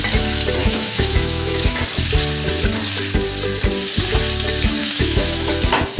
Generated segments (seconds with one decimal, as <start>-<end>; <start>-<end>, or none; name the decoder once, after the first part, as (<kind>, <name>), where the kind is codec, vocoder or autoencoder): 0.6-1.8 (autoencoder, DAC-VAE); 4.8-5.5